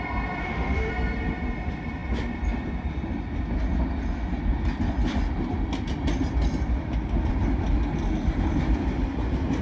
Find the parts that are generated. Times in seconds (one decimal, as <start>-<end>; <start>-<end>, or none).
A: 0.4-0.9